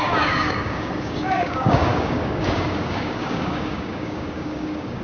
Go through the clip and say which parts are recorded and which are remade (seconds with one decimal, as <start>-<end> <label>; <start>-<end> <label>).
0.0-5.0 remade

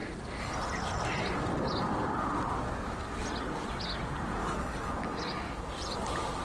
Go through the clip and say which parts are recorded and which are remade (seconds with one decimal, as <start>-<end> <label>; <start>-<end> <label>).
0.0-4.4 recorded; 4.4-4.9 remade; 4.9-6.4 recorded

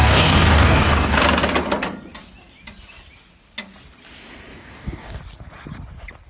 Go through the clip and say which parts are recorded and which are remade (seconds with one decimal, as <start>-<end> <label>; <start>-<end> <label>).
0.0-1.2 remade; 1.2-4.5 recorded; 4.5-5.2 remade; 5.2-6.3 recorded

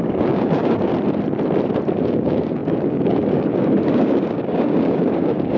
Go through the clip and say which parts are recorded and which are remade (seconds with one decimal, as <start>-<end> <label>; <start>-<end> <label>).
0.0-0.9 remade; 0.9-2.0 recorded; 2.0-5.6 remade

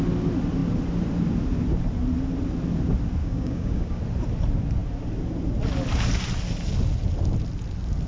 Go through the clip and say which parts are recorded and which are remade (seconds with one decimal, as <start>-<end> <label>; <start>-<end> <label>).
0.0-3.2 recorded; 3.2-4.0 remade; 4.0-8.1 recorded

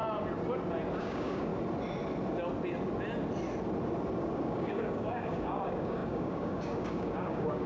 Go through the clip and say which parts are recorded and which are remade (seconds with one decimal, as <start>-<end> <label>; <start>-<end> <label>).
0.0-1.0 recorded; 1.0-1.5 remade; 1.5-4.2 recorded; 4.2-7.7 remade

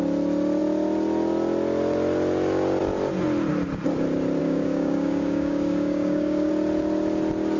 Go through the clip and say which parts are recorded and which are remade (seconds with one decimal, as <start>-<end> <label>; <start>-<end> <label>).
0.0-4.4 recorded; 4.4-6.5 remade; 6.5-7.6 recorded

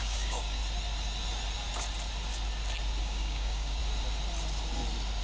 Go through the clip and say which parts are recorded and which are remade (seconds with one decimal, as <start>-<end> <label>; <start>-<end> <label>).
0.0-0.6 remade; 0.6-3.0 recorded; 3.0-3.8 remade; 3.8-5.2 recorded